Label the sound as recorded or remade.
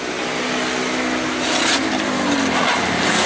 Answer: recorded